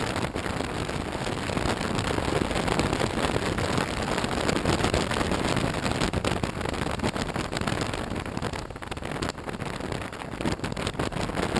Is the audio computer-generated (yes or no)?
no